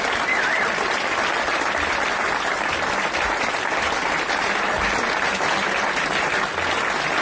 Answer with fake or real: real